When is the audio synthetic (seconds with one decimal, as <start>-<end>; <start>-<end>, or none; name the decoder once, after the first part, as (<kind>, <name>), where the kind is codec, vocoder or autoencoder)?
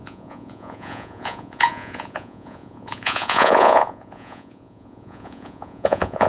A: 0.0-6.3 (vocoder, Vocos)